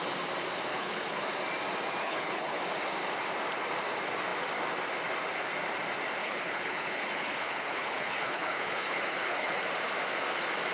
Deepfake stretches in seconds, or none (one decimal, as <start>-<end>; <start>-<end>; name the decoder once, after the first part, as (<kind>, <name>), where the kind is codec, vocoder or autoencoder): 0.7-1.2 (codec, HILCodec); 2.0-2.6; 6.2-9.6